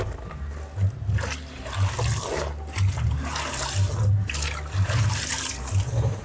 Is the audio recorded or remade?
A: recorded